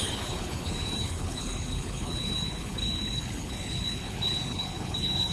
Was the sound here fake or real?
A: fake